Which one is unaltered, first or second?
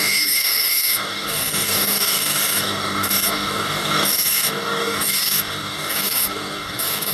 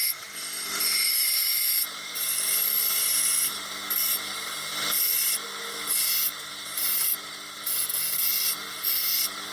second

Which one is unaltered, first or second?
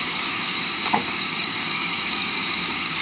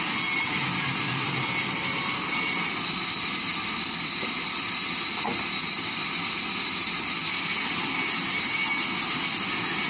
second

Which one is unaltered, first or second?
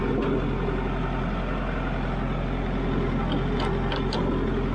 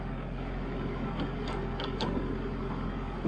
first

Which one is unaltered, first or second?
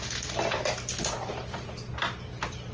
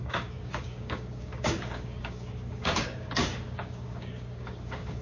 first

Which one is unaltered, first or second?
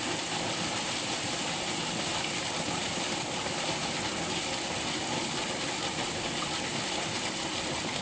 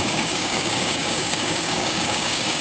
first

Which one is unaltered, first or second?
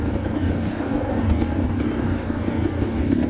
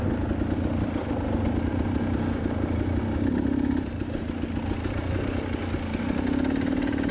second